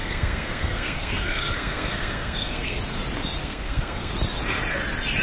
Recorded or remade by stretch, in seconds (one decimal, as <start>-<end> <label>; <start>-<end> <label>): 0.0-2.8 remade; 2.8-3.4 recorded; 3.4-4.1 remade; 4.1-5.2 recorded